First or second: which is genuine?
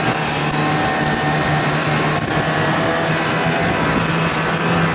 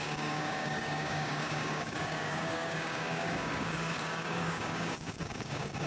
first